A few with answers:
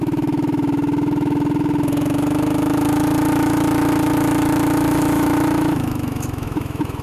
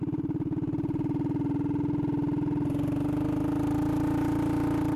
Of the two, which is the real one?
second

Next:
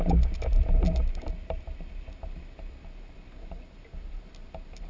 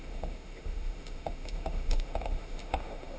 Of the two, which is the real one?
first